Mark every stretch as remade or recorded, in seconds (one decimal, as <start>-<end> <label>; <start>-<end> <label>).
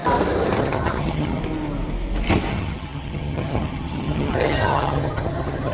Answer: 0.0-0.6 recorded; 0.6-1.4 remade; 1.4-2.5 recorded; 2.5-5.7 remade